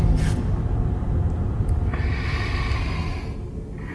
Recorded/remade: recorded